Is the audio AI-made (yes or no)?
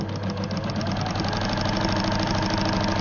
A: no